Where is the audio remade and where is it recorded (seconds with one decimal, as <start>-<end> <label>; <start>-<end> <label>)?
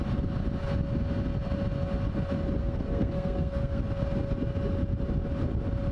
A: 0.0-2.6 recorded; 2.6-3.8 remade; 3.8-5.9 recorded